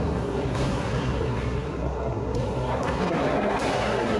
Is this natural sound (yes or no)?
no